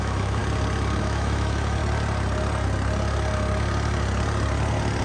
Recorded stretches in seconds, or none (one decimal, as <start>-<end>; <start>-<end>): 0.4-1.0; 1.8-5.0